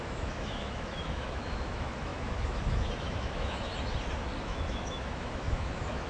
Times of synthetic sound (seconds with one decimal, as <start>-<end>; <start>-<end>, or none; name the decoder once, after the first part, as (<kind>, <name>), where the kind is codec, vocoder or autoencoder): 0.0-3.7 (autoencoder, DAC-VAE); 4.4-6.1